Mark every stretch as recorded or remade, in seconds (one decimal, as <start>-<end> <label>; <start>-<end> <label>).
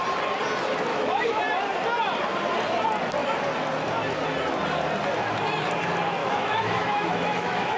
0.0-0.9 recorded; 0.9-1.4 remade; 1.4-6.2 recorded; 6.2-7.8 remade